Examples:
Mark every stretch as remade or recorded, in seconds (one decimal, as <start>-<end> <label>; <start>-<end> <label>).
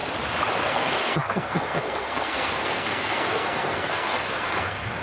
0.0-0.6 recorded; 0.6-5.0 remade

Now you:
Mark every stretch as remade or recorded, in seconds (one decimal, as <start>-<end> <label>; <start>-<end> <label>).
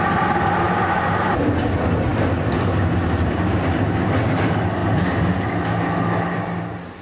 0.0-7.0 recorded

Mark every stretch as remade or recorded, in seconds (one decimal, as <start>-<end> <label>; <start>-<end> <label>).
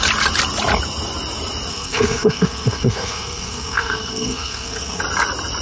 0.0-1.7 recorded; 1.7-5.0 remade; 5.0-5.6 recorded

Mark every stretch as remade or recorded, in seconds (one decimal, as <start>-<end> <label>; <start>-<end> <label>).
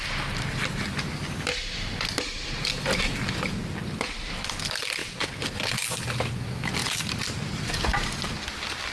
0.0-8.9 recorded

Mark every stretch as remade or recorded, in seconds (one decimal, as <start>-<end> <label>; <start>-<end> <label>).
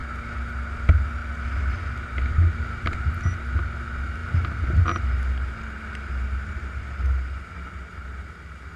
0.0-8.8 recorded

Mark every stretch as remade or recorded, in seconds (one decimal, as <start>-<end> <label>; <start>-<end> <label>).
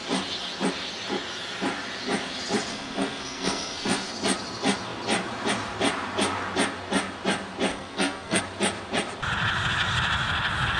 0.0-2.7 recorded; 2.7-4.1 remade; 4.1-7.7 recorded; 7.7-8.4 remade; 8.4-10.8 recorded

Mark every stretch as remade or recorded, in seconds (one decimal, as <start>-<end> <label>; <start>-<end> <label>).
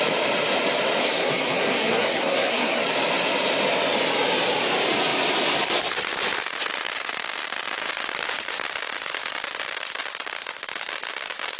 0.0-1.0 recorded; 1.0-2.8 remade; 2.8-11.6 recorded